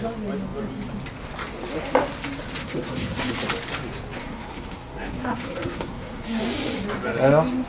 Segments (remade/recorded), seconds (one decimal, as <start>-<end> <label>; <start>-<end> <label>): 0.0-2.6 recorded; 2.6-3.3 remade; 3.3-4.2 recorded; 4.2-6.4 remade; 6.4-7.7 recorded